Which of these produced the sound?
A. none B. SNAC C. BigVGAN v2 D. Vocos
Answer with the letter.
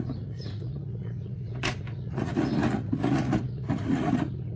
D